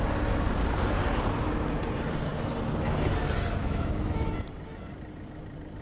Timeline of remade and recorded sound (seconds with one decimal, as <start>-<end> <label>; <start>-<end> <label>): 0.0-3.6 recorded; 3.6-4.3 remade; 4.3-5.8 recorded